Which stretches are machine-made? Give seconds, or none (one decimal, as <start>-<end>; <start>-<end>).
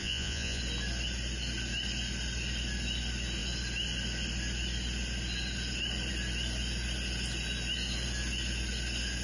0.0-0.6